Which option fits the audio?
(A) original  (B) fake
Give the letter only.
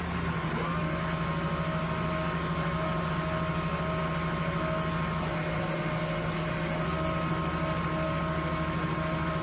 A